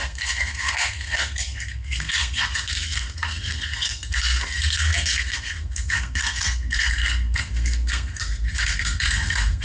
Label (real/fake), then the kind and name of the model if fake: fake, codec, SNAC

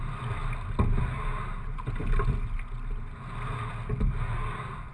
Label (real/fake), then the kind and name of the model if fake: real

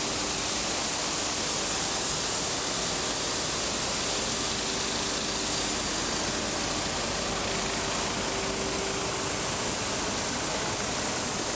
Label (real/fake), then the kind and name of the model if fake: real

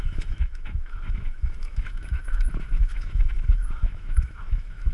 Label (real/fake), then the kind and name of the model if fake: fake, autoencoder, DAC-VAE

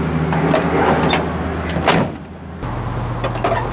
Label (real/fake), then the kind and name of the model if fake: real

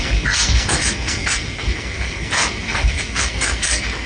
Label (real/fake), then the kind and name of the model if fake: fake, codec, SNAC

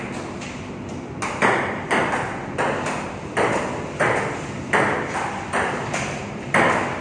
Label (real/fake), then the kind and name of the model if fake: real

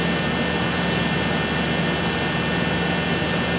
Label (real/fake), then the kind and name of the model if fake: real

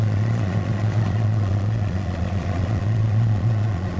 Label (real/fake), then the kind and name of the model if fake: fake, vocoder, Vocos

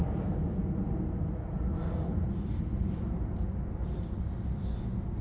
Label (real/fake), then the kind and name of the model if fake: real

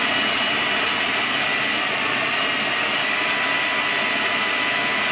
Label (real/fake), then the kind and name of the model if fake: real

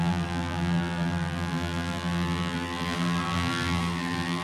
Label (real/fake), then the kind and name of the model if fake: fake, vocoder, BigVGAN v2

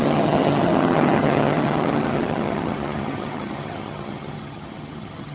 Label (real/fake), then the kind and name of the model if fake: fake, vocoder, HiFi-GAN